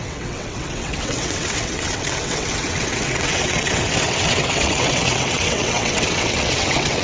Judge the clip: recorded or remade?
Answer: remade